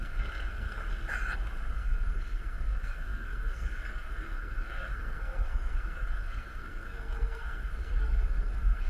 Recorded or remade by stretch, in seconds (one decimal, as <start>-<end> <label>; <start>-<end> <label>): 0.0-0.8 remade; 0.8-1.7 recorded; 1.7-8.9 remade